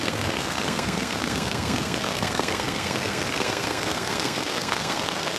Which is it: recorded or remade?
remade